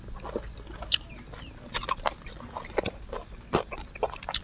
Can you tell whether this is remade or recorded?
recorded